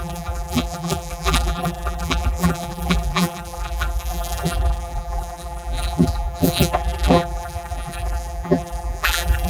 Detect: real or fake fake